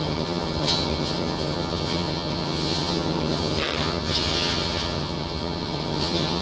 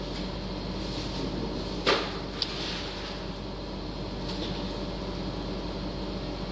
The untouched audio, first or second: second